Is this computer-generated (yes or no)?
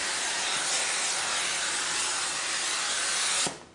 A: no